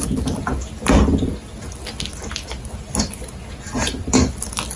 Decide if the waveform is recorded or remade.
recorded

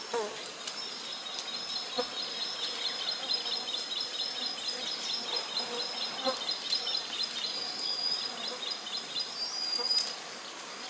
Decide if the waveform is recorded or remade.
recorded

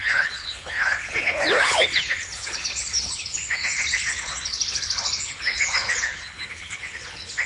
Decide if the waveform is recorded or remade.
remade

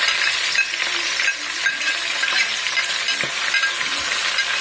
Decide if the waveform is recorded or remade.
recorded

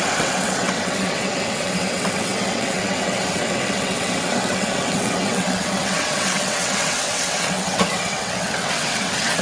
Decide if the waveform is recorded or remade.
remade